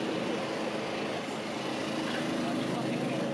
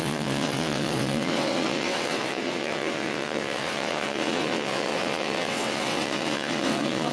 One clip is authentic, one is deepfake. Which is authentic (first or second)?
first